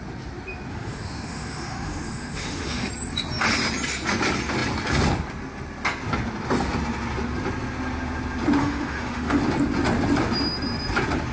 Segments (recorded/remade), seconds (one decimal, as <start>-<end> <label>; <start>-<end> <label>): 0.0-0.7 recorded; 0.7-2.9 remade; 2.9-8.6 recorded; 8.6-9.4 remade; 9.4-11.3 recorded